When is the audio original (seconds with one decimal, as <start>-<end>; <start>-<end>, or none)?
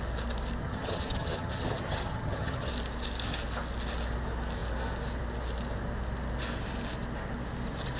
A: 0.0-0.6; 2.7-8.0